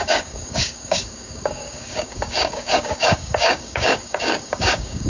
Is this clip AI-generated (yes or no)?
yes